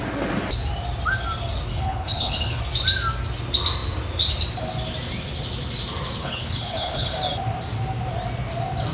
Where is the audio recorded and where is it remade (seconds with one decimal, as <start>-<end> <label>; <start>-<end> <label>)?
0.0-1.7 recorded; 1.7-2.6 remade; 2.6-6.2 recorded; 6.2-7.1 remade; 7.1-8.9 recorded

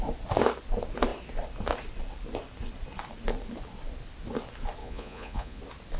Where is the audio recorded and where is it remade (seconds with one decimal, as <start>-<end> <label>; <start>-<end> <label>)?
0.0-4.8 recorded; 4.8-5.6 remade; 5.6-6.0 recorded

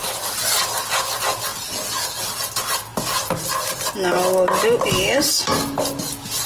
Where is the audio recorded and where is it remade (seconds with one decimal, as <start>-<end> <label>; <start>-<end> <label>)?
0.0-1.5 recorded; 1.5-2.2 remade; 2.2-6.5 recorded

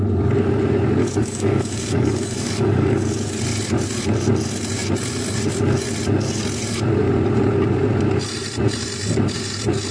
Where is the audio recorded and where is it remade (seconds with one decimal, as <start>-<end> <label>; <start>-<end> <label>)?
0.0-1.0 recorded; 1.0-3.3 remade; 3.3-9.9 recorded

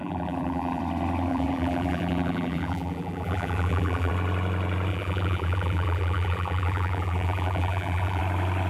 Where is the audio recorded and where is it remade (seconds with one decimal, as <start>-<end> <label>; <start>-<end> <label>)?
0.0-0.8 remade; 0.8-1.3 recorded; 1.3-4.1 remade; 4.1-4.9 recorded; 4.9-8.2 remade; 8.2-8.7 recorded